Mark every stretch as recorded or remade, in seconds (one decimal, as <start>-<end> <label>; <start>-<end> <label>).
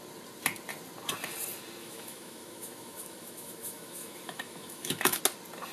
0.0-1.8 recorded; 1.8-5.2 remade; 5.2-5.7 recorded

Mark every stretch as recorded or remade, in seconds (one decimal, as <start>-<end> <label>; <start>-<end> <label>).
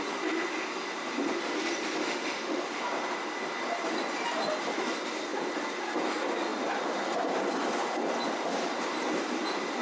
0.0-2.0 recorded; 2.0-2.6 remade; 2.6-9.8 recorded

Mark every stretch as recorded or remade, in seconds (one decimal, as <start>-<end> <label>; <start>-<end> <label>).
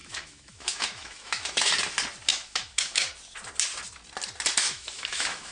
0.0-1.7 remade; 1.7-2.3 recorded; 2.3-3.1 remade; 3.1-4.6 recorded; 4.6-5.5 remade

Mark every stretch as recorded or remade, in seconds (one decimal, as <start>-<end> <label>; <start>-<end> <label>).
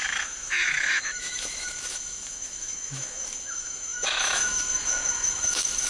0.0-5.9 remade